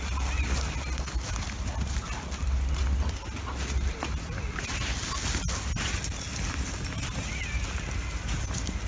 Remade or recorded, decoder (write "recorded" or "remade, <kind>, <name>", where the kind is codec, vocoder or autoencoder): recorded